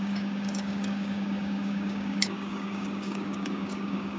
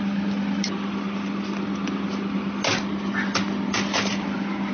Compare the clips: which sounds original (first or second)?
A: second